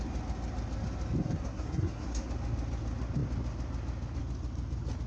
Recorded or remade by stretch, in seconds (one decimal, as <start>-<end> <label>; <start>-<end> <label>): 0.0-1.2 recorded; 1.2-2.3 remade; 2.3-5.1 recorded